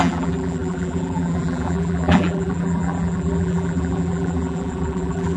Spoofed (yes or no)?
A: yes